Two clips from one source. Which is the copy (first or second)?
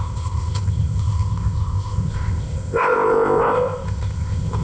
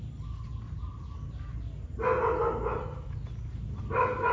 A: first